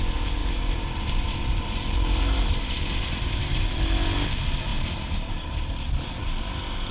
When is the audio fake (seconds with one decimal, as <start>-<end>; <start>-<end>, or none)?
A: 0.4-3.8; 4.7-5.3